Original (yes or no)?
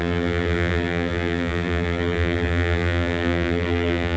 no